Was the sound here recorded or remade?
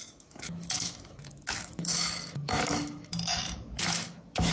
remade